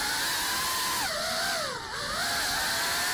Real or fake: real